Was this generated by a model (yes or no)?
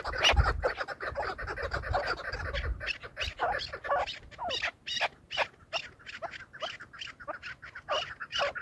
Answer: no